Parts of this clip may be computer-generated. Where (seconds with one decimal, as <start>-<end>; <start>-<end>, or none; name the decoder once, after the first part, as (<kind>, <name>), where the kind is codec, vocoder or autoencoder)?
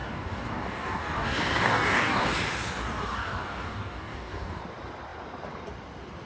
0.0-2.3 (codec, DAC); 2.8-4.6